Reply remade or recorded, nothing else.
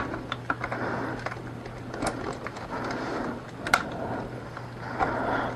recorded